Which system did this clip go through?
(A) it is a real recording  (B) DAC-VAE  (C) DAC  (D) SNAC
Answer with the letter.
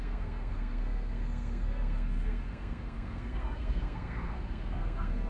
D